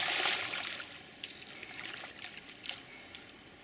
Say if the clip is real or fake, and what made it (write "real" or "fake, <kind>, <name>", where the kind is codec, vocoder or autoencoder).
real